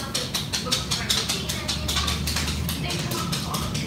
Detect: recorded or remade recorded